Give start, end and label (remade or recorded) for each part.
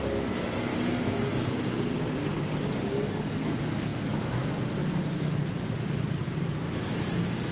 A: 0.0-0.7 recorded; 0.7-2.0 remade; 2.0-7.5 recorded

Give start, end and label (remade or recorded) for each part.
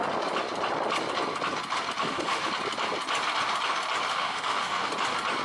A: 0.0-2.0 recorded; 2.0-2.5 remade; 2.5-4.1 recorded; 4.1-4.9 remade; 4.9-5.4 recorded